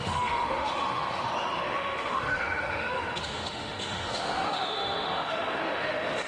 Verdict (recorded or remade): remade